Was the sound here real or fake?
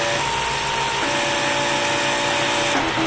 real